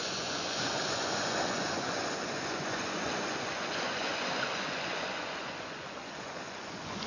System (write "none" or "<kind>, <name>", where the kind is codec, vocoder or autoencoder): vocoder, Vocos